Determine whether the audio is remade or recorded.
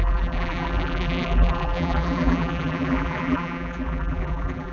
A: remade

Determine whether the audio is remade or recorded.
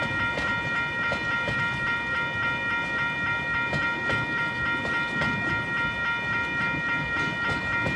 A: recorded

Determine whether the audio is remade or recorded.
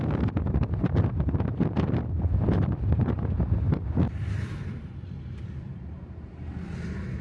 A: recorded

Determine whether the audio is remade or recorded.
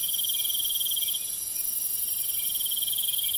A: recorded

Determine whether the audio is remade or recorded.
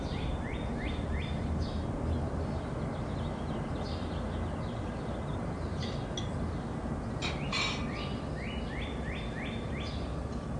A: recorded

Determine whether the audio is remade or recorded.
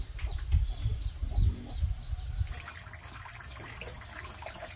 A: recorded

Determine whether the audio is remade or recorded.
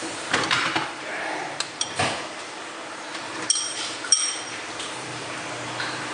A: remade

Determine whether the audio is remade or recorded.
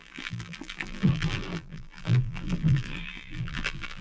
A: remade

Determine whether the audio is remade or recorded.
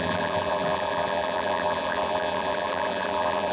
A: remade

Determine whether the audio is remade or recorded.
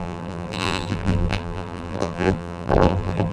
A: remade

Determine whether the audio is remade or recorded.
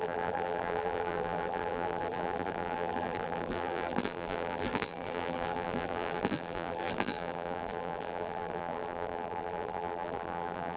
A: remade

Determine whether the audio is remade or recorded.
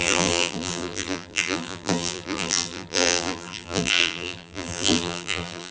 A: remade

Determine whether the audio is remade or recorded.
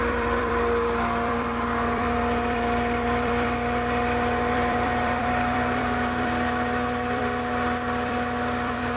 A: remade